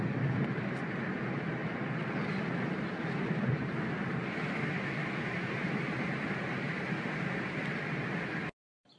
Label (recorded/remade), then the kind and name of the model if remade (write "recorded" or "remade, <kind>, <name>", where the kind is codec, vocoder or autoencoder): recorded